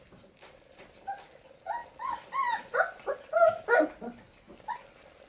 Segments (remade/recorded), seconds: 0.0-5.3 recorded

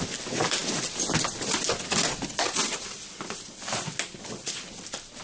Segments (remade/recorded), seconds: 0.0-5.2 recorded

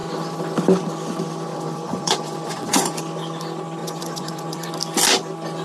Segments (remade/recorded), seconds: 0.0-1.5 recorded; 1.5-3.0 remade; 3.0-3.8 recorded; 3.8-4.7 remade; 4.7-5.6 recorded

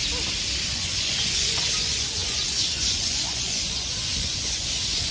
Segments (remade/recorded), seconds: 0.0-0.7 recorded; 0.7-5.1 remade

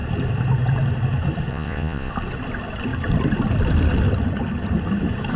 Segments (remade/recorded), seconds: 0.0-1.5 recorded; 1.5-2.1 remade; 2.1-5.4 recorded

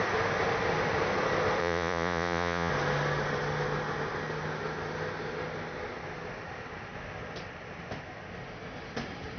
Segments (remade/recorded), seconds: 0.0-1.6 recorded; 1.6-2.7 remade; 2.7-9.4 recorded

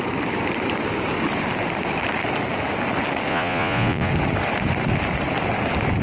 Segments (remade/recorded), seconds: 0.0-3.3 recorded; 3.3-4.1 remade; 4.1-6.0 recorded